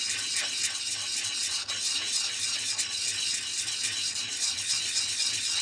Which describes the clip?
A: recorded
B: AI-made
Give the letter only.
A